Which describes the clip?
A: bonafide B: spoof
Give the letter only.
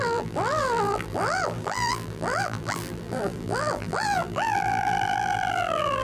B